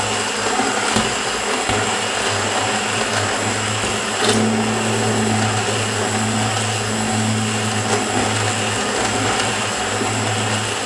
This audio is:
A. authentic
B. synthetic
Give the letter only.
A